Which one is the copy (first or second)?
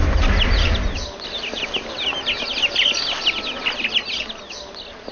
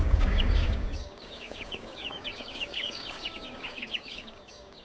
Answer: second